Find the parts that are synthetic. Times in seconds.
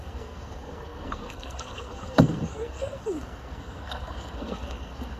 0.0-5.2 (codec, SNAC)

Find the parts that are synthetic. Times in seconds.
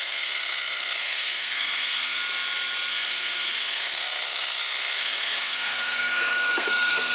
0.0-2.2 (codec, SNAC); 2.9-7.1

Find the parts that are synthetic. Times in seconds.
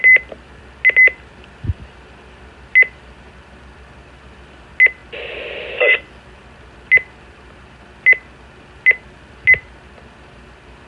none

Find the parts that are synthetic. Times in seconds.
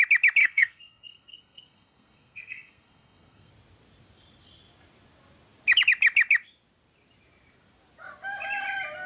0.4-3.5 (codec, SNAC)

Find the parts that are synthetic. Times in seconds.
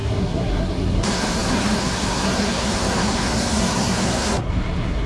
0.0-5.1 (codec, SNAC)